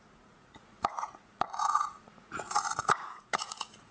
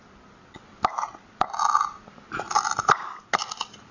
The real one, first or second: second